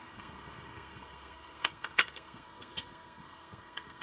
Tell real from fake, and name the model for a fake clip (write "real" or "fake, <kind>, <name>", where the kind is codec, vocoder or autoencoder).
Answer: fake, codec, SNAC